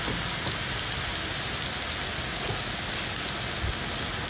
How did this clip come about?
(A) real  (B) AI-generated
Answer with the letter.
A